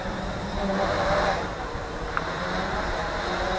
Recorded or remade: remade